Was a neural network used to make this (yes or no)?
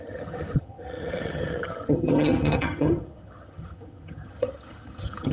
yes